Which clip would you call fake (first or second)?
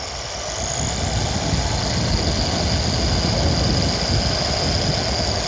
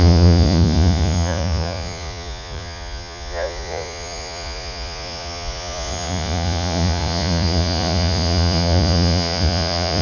second